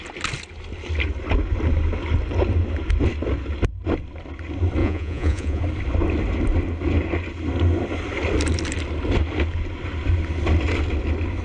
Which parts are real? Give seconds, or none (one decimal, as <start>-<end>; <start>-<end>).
0.0-4.8; 5.6-11.4